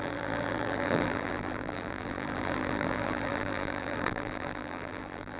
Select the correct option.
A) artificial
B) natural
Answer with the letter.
A